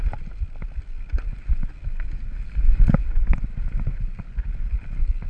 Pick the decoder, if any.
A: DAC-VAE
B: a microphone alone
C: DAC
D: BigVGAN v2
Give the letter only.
B